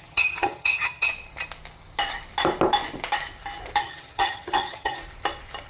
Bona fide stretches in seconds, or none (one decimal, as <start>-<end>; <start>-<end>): 1.1-3.8; 5.0-5.7